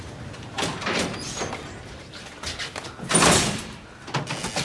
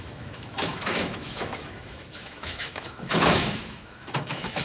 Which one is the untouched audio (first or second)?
first